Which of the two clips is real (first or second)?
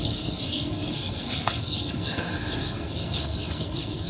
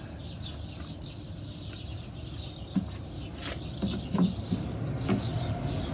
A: second